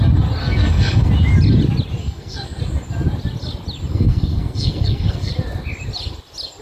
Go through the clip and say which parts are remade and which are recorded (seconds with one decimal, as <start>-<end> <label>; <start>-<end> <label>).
0.0-0.4 recorded; 0.4-1.1 remade; 1.1-2.0 recorded; 2.0-2.6 remade; 2.6-3.9 recorded; 3.9-5.3 remade; 5.3-6.6 recorded